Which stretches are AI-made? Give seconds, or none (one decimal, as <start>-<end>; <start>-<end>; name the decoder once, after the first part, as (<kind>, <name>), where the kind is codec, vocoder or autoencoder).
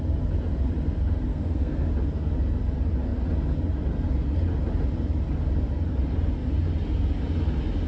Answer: 1.3-1.9 (codec, SNAC)